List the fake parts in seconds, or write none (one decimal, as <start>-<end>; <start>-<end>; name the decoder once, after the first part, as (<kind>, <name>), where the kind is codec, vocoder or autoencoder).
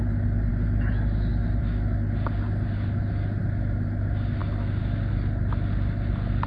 none